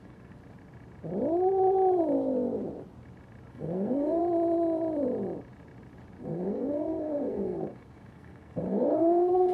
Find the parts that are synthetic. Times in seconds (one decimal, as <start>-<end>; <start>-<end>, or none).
0.0-0.4; 3.5-4.2; 6.2-9.5